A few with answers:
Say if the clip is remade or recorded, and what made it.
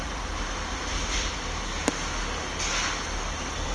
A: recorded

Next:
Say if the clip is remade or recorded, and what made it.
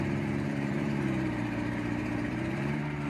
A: remade, vocoder, BigVGAN v2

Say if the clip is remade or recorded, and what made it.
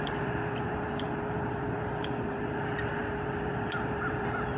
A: remade, vocoder, BigVGAN v2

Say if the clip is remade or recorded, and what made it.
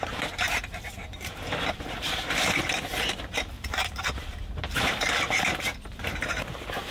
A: remade, vocoder, BigVGAN v2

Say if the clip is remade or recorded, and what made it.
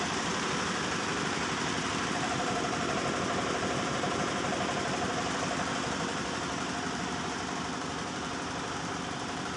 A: remade, vocoder, BigVGAN v2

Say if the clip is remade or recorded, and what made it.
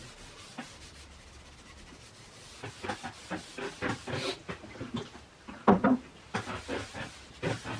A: remade, vocoder, BigVGAN v2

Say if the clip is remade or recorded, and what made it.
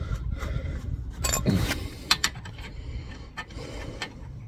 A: remade, vocoder, BigVGAN v2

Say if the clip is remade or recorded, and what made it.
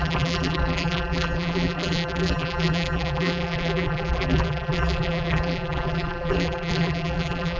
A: remade, vocoder, BigVGAN v2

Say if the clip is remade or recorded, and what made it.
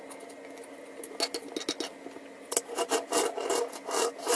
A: recorded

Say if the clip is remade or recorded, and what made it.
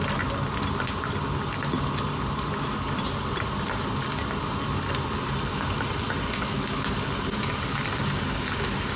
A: recorded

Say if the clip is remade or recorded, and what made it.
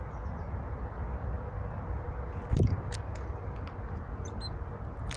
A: recorded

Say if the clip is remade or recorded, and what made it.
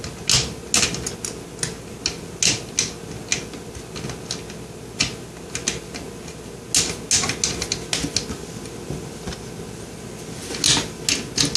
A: recorded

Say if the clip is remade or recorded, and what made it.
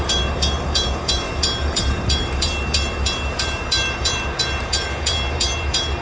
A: remade, vocoder, BigVGAN v2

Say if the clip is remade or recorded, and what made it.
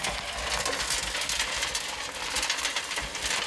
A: recorded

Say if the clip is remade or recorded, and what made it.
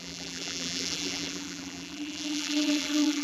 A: remade, vocoder, BigVGAN v2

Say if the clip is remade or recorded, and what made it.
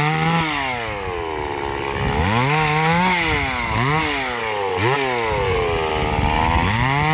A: recorded